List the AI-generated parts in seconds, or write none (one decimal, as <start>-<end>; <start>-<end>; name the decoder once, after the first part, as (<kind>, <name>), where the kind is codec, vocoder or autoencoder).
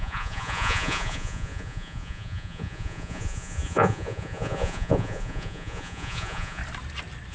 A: 0.0-6.6 (vocoder, Vocos)